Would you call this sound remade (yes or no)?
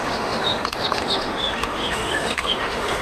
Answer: yes